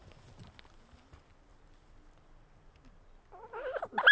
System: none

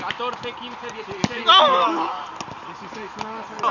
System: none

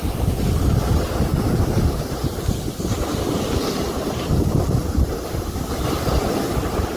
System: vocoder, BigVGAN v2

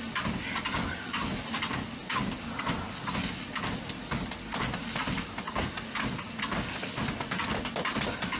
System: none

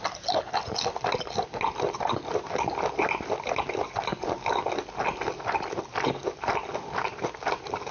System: none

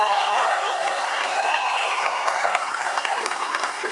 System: codec, SNAC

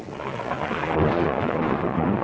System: vocoder, Vocos